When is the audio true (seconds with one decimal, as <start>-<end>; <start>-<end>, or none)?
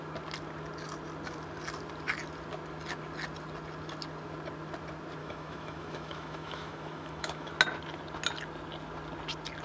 0.0-5.2; 7.5-9.6